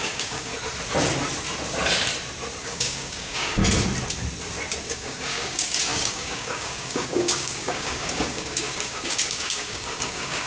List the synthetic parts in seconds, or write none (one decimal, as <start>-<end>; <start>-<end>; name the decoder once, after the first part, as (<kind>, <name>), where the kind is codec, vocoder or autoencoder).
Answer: 0.0-0.5 (codec, DAC); 2.6-3.6; 4.8-10.5